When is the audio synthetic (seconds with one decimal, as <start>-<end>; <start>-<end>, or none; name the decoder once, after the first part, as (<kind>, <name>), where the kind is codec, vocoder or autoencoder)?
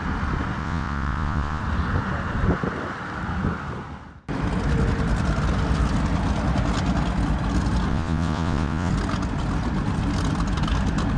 0.6-1.6 (vocoder, Vocos); 7.9-8.9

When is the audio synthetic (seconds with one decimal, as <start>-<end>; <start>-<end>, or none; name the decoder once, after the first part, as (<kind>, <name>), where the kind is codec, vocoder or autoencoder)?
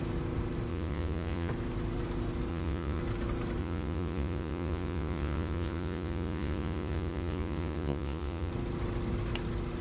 0.7-1.5 (vocoder, Vocos); 2.5-3.0; 3.6-8.5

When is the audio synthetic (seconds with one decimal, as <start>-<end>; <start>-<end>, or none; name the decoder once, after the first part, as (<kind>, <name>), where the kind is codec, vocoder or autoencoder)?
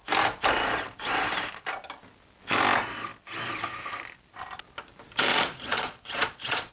5.3-6.7 (vocoder, Vocos)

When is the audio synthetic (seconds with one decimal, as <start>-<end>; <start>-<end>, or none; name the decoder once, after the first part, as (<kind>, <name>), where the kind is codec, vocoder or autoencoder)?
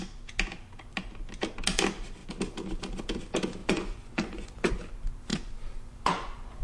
3.6-4.7 (vocoder, Vocos); 5.3-6.6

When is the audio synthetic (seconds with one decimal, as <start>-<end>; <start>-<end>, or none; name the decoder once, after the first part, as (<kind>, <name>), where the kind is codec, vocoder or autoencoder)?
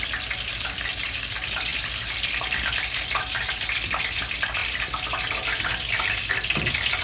none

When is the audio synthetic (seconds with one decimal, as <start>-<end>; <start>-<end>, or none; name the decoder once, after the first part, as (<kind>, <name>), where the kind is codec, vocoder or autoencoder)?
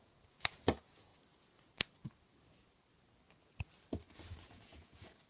0.0-1.1 (vocoder, Vocos); 4.3-5.3